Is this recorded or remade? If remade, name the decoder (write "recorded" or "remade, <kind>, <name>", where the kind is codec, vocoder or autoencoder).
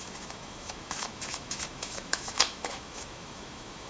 remade, autoencoder, DAC-VAE